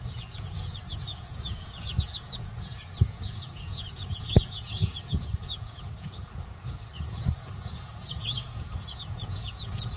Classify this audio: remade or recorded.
remade